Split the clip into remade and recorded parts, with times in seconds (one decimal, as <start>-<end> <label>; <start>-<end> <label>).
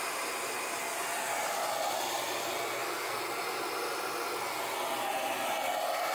0.0-2.7 recorded; 2.7-3.2 remade; 3.2-6.1 recorded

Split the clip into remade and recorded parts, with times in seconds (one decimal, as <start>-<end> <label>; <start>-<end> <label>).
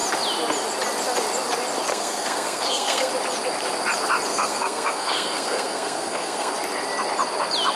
0.0-1.9 recorded; 1.9-3.1 remade; 3.1-4.3 recorded; 4.3-6.5 remade; 6.5-7.8 recorded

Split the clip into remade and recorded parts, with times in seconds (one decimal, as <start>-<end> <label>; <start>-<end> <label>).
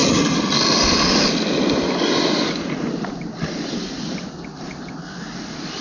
0.0-5.8 recorded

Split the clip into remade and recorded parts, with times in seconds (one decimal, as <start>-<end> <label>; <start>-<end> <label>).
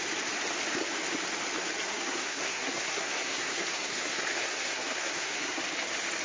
0.0-1.9 recorded; 1.9-5.6 remade; 5.6-6.2 recorded